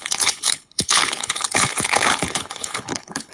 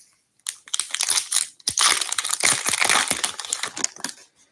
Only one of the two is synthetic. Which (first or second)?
first